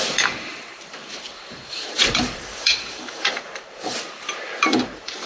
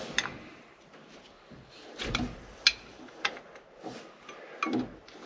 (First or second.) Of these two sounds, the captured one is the second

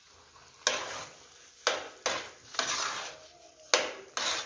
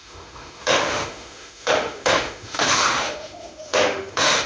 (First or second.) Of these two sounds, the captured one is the first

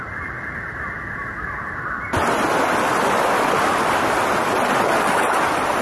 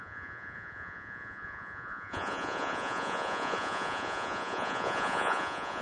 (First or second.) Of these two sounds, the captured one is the first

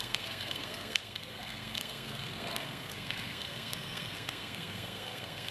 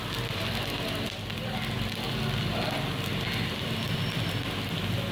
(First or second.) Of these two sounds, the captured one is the second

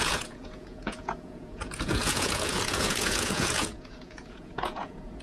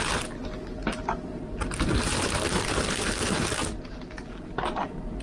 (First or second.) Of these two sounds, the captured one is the second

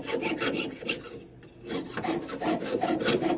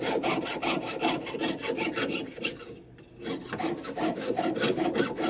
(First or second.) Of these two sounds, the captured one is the first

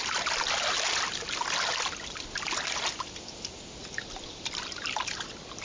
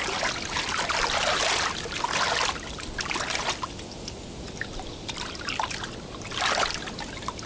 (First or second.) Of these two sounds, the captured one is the second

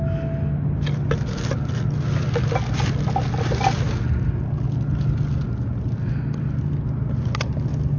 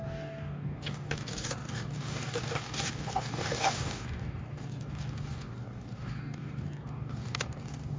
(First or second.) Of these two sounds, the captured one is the first